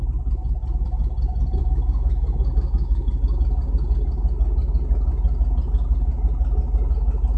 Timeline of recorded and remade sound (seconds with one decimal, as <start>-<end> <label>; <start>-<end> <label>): 0.0-1.6 recorded; 1.6-3.1 remade; 3.1-7.4 recorded